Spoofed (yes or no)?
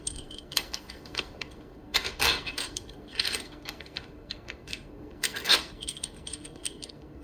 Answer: yes